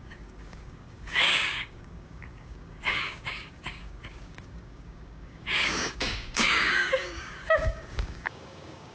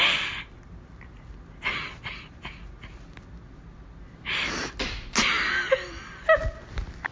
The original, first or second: second